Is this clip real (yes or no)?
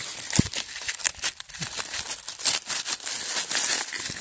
yes